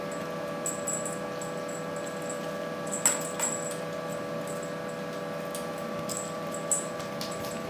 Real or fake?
real